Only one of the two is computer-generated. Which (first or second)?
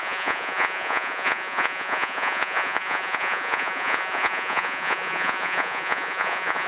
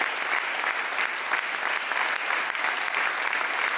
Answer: first